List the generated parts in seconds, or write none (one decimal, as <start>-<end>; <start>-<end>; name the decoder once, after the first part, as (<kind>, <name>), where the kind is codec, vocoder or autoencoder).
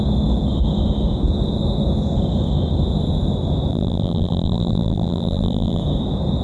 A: 3.7-5.8 (vocoder, BigVGAN v2)